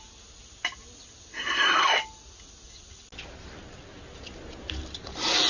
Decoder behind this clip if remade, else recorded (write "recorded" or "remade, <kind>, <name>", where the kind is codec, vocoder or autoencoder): recorded